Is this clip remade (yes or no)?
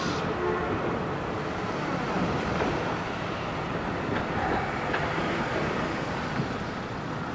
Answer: no